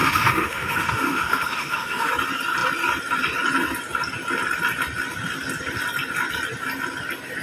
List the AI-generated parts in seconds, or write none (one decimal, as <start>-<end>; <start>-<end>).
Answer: 0.0-2.1